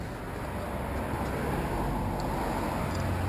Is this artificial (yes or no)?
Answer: no